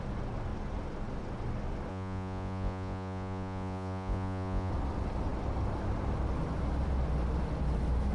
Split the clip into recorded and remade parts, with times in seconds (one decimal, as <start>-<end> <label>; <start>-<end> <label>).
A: 0.0-1.9 recorded; 1.9-4.7 remade; 4.7-8.1 recorded